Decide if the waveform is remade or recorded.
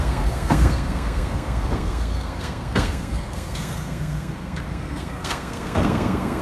remade